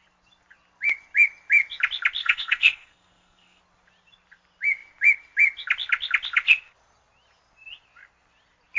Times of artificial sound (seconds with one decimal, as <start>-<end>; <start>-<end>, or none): 2.2-3.6